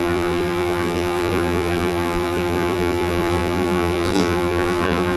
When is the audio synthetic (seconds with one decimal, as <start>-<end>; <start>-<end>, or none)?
0.0-5.2